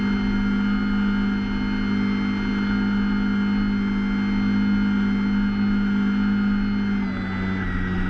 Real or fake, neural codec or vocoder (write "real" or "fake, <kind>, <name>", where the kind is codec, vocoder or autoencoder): real